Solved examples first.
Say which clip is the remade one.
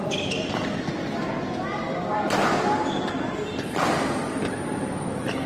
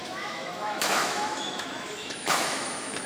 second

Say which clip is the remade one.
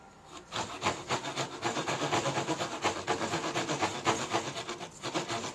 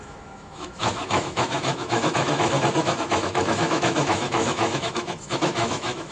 second